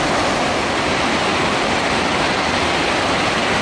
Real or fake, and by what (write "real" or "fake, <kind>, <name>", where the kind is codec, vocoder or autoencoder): real